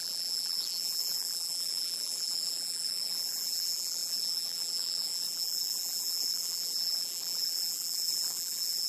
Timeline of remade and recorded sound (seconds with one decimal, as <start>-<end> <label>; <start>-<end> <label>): 0.0-8.9 remade